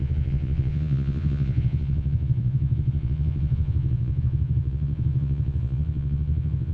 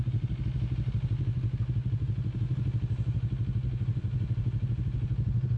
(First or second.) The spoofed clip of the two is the first